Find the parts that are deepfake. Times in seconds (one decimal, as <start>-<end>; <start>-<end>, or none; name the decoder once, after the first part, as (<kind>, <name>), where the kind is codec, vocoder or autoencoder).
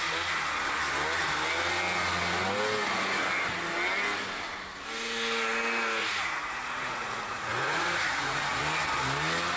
6.0-8.6 (vocoder, Vocos)